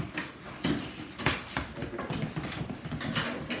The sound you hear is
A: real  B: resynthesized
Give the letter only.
A